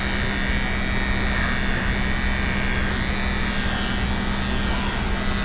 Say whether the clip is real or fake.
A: real